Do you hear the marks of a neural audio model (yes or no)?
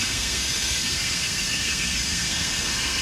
yes